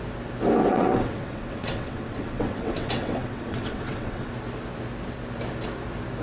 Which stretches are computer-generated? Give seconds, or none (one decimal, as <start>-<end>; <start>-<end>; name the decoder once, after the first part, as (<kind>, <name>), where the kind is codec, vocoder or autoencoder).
0.6-4.3 (vocoder, WaveNeXt)